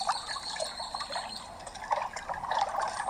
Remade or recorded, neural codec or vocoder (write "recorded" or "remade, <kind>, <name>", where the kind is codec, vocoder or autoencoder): recorded